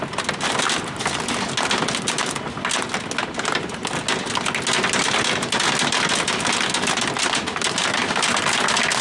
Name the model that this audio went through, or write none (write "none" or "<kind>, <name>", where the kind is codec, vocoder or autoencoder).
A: none